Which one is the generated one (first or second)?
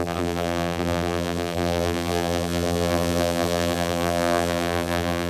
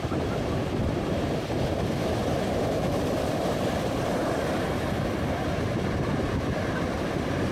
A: first